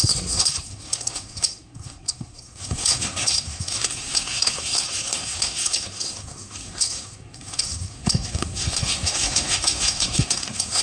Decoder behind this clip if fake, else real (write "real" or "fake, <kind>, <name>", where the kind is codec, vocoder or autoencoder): fake, codec, SNAC